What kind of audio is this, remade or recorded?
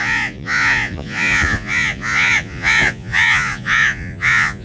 remade